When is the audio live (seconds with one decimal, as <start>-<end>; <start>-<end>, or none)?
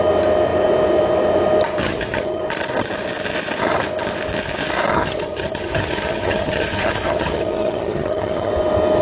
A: 0.0-1.8; 2.4-4.9; 8.5-9.0